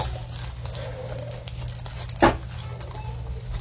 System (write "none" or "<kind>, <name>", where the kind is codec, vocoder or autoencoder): none